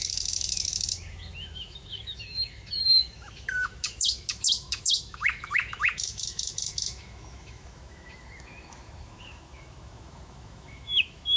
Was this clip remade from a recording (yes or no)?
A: yes